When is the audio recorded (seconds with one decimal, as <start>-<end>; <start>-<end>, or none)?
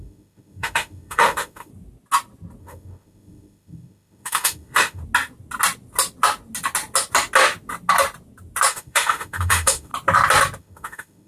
1.7-2.6; 5.0-8.7; 9.9-10.6